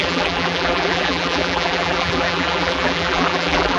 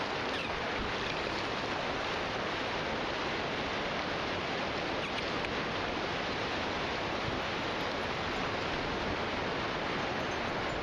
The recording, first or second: second